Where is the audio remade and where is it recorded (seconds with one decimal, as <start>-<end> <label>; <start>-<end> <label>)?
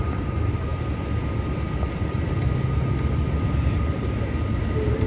0.0-5.1 recorded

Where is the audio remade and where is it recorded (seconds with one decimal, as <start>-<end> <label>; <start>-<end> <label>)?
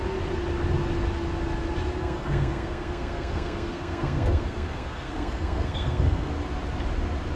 0.0-2.0 recorded; 2.0-6.3 remade; 6.3-7.4 recorded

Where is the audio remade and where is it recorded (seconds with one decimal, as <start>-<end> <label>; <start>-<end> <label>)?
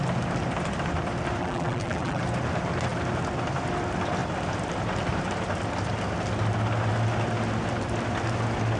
0.0-1.4 recorded; 1.4-2.2 remade; 2.2-8.8 recorded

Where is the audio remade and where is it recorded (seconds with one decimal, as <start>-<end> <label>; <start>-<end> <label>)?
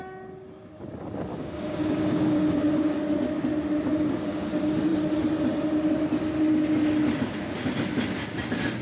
0.0-1.3 recorded; 1.3-2.9 remade; 2.9-3.9 recorded; 3.9-4.5 remade; 4.5-8.8 recorded